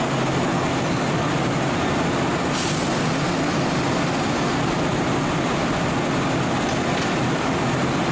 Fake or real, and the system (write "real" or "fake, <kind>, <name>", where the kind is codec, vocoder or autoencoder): real